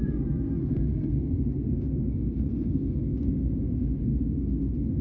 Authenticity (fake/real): fake